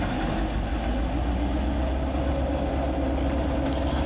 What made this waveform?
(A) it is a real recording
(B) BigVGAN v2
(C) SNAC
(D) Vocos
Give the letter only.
A